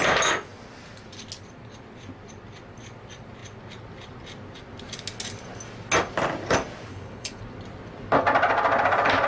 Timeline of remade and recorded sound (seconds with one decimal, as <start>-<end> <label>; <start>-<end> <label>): 0.0-6.9 recorded; 6.9-7.4 remade; 7.4-9.3 recorded